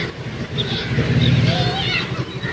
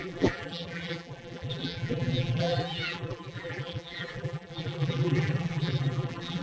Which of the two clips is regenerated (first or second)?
second